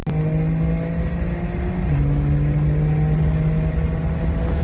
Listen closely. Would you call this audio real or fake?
real